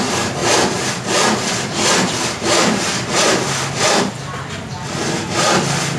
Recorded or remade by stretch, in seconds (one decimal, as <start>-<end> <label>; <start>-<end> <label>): 0.0-6.0 recorded